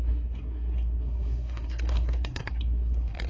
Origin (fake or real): fake